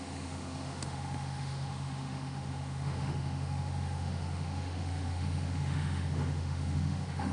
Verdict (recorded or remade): remade